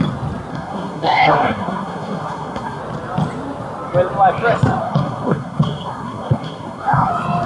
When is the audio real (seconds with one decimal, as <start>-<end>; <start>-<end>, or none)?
0.0-0.5; 2.8-4.8; 7.1-7.5